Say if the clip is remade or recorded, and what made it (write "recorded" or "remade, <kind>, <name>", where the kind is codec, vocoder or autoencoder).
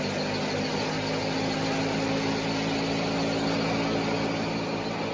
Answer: recorded